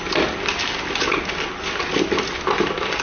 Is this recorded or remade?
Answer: recorded